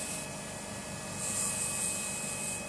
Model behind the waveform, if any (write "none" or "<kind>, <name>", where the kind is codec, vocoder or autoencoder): none